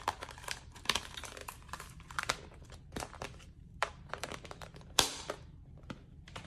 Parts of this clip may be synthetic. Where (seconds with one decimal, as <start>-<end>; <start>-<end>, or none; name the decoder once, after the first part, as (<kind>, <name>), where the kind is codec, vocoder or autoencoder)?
0.0-6.5 (vocoder, BigVGAN v2)